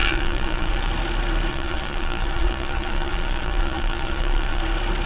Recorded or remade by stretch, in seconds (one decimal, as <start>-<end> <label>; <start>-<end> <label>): 0.0-0.9 remade; 0.9-1.5 recorded; 1.5-4.6 remade; 4.6-5.1 recorded